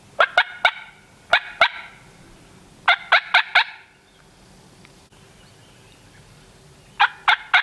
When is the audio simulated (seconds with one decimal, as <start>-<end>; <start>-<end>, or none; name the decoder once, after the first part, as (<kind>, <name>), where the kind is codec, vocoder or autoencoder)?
none